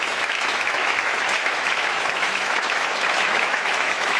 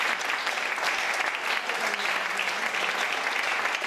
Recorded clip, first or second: second